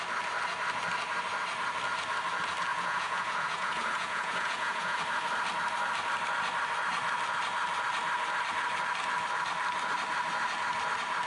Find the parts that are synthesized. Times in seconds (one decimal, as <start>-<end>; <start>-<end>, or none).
2.7-5.0